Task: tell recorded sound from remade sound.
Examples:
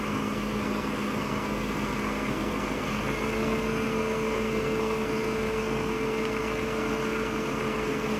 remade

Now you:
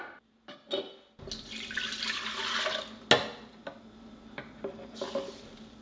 recorded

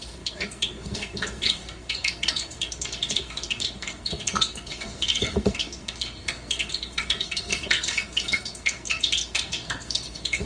remade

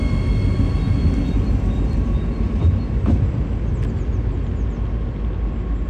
recorded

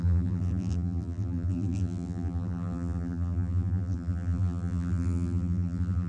remade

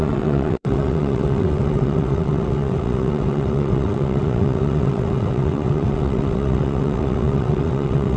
remade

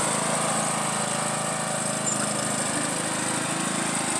recorded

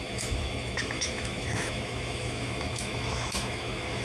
remade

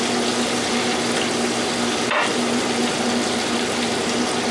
recorded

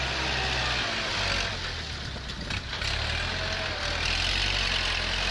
recorded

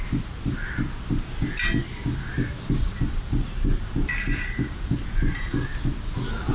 recorded